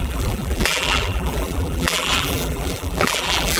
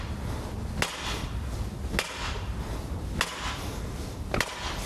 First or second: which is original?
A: second